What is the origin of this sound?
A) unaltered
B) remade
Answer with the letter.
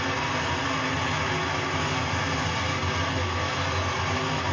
A